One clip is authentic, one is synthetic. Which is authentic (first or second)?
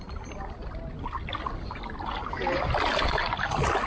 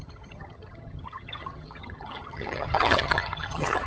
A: first